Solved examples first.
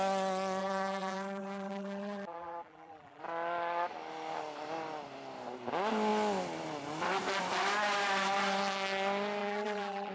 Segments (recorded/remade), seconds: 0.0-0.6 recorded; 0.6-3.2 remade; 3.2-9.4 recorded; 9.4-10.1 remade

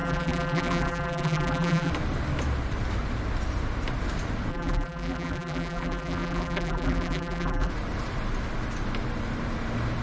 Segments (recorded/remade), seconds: 0.0-1.9 remade; 1.9-4.5 recorded; 4.5-7.7 remade; 7.7-10.0 recorded

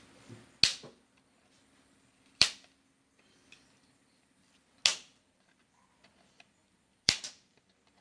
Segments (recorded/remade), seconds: 0.0-0.7 recorded; 0.7-2.9 remade; 2.9-4.9 recorded; 4.9-5.9 remade; 5.9-6.6 recorded; 6.6-7.3 remade; 7.3-8.0 recorded

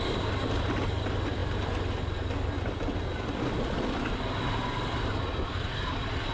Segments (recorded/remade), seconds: 0.0-1.4 remade; 1.4-5.2 recorded; 5.2-6.3 remade

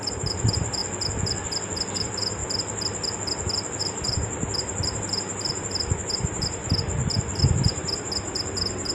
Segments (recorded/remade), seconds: 0.0-0.8 remade; 0.8-1.9 recorded; 1.9-2.4 remade; 2.4-3.8 recorded; 3.8-6.6 remade; 6.6-7.4 recorded; 7.4-8.9 remade

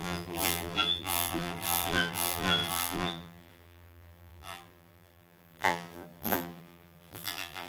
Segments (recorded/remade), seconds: 0.0-7.7 remade

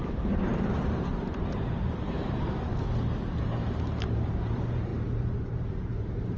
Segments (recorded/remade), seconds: 0.0-2.7 remade; 2.7-3.4 recorded; 3.4-6.4 remade

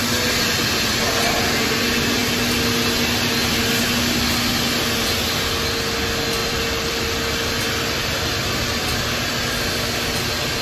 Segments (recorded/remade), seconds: 0.0-6.4 recorded; 6.4-7.2 remade; 7.2-10.6 recorded